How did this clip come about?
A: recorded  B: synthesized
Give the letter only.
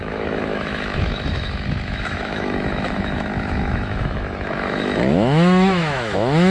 B